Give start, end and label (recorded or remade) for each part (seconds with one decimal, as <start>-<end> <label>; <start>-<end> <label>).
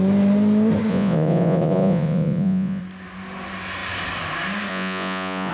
0.0-0.9 recorded; 0.9-2.8 remade; 2.8-4.7 recorded; 4.7-5.5 remade